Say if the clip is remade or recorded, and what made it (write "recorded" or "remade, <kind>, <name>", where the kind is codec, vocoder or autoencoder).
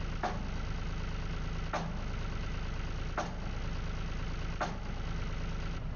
recorded